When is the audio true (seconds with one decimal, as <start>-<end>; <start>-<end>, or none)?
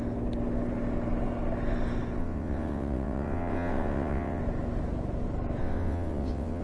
0.0-2.2; 4.4-5.6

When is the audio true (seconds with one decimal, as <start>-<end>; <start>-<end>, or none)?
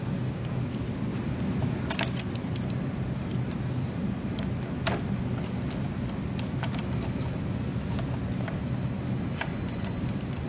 0.0-9.5; 10.0-10.5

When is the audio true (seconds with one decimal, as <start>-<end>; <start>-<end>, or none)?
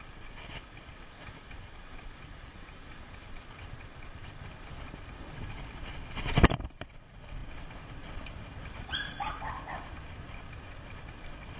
0.0-11.6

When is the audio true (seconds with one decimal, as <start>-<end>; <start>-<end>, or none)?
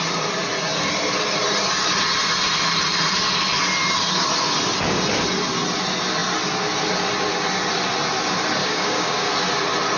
0.0-8.6; 9.3-10.0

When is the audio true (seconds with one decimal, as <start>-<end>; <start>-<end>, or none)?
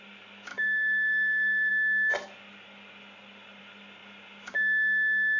0.0-0.5; 1.7-5.4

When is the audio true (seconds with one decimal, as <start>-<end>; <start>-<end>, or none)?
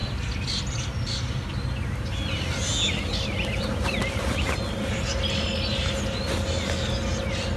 0.0-7.6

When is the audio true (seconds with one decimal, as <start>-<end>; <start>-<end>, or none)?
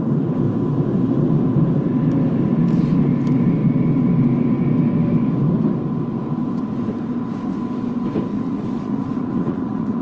0.0-8.3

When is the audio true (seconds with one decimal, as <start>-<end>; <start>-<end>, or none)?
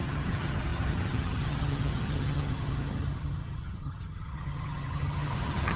none